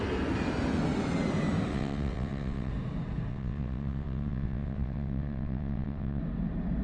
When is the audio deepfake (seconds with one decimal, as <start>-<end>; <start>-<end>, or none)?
1.7-2.7; 3.3-6.2